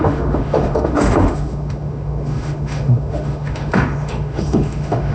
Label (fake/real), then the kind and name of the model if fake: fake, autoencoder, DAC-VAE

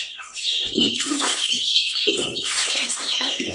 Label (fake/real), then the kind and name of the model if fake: fake, codec, SNAC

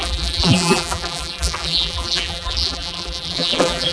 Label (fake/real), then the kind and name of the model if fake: fake, vocoder, BigVGAN v2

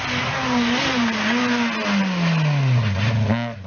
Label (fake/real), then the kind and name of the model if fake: real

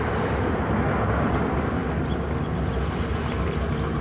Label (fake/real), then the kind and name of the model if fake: real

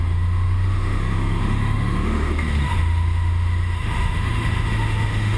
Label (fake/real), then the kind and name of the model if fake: fake, autoencoder, DAC-VAE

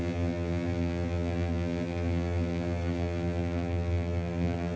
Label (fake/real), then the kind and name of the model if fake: fake, vocoder, BigVGAN v2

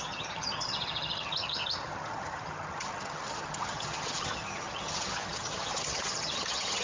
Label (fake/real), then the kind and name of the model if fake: fake, vocoder, HiFi-GAN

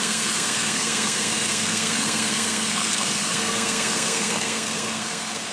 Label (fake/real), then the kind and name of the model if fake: fake, codec, SNAC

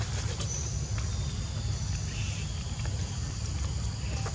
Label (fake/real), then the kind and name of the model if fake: fake, vocoder, BigVGAN v2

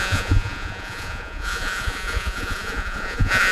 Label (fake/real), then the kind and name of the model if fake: fake, vocoder, Vocos